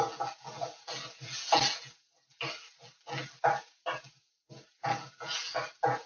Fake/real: real